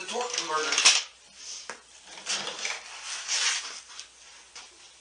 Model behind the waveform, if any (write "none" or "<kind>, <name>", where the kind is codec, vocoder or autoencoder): none